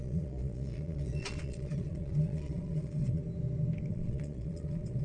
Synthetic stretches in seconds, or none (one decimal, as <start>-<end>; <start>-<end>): 0.0-3.2; 3.9-5.0